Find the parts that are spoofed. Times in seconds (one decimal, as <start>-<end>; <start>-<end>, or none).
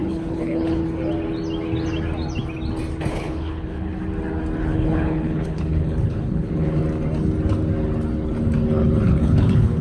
0.0-0.8; 3.1-3.9; 4.6-6.8; 8.8-9.8